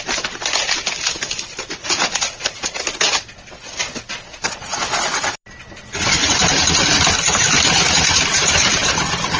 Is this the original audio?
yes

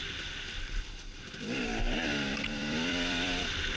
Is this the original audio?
no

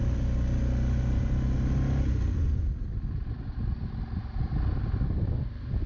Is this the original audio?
yes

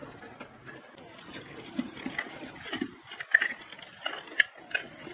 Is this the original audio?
yes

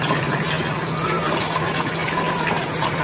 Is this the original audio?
yes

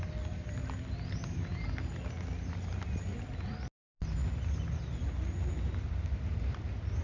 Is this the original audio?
yes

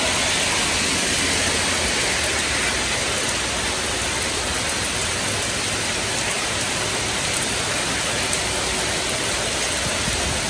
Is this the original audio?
yes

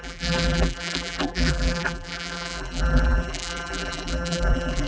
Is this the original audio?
no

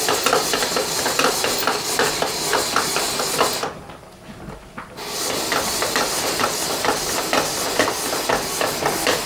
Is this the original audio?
yes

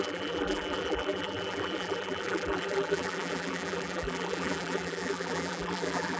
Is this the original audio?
no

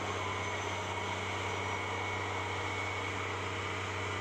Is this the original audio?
yes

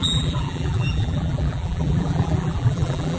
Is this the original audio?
no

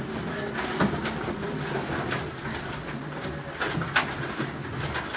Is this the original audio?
yes